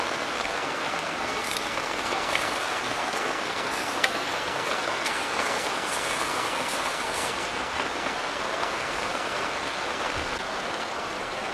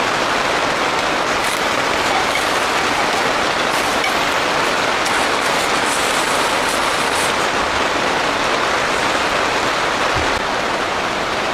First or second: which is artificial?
first